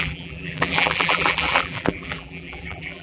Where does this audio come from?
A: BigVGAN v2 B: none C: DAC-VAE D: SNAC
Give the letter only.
A